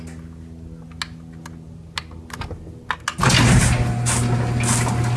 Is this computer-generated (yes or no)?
no